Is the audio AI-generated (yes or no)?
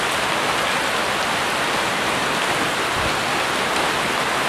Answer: no